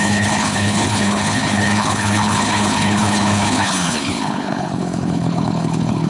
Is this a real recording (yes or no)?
no